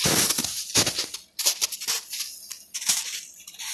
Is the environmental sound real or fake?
real